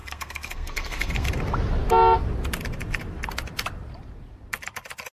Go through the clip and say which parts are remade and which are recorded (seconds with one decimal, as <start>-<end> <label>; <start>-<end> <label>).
0.0-1.3 remade; 1.3-5.1 recorded